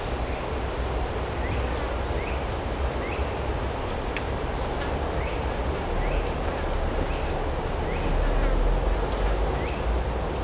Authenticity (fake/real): real